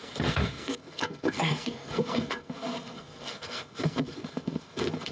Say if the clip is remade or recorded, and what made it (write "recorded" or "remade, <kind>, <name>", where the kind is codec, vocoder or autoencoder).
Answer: remade, codec, SNAC